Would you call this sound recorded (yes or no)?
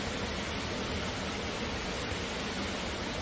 yes